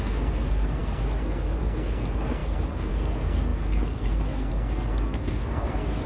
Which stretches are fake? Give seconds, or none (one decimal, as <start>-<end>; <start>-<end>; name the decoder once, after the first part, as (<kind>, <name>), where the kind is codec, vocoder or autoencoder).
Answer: 0.0-6.1 (codec, SNAC)